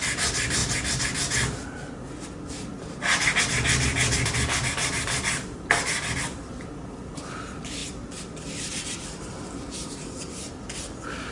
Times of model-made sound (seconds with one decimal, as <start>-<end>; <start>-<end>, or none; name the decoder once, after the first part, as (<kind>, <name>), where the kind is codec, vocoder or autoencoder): 0.0-0.6 (vocoder, BigVGAN v2); 3.4-7.8; 8.7-11.3